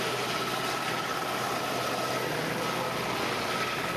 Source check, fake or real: real